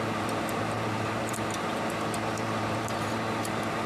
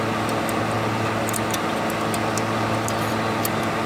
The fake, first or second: first